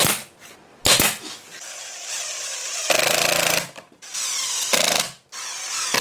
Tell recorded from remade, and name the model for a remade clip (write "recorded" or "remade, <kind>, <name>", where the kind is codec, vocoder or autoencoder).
recorded